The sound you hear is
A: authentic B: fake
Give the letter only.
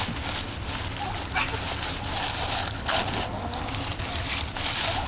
A